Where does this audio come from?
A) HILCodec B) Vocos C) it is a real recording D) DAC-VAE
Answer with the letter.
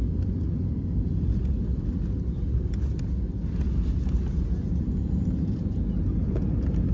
C